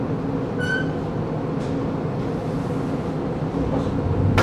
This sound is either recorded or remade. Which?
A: recorded